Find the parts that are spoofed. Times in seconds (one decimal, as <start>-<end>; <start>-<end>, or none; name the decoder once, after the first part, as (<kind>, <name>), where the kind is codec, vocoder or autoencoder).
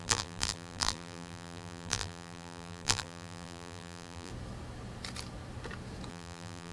0.0-4.3 (vocoder, BigVGAN v2); 6.1-6.7